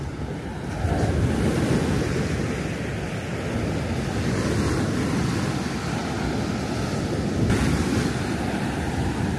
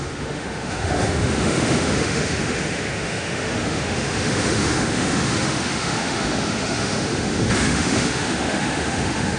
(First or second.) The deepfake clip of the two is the second